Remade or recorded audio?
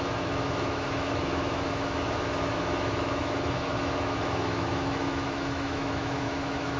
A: remade